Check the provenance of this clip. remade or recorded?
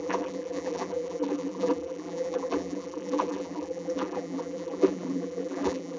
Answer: remade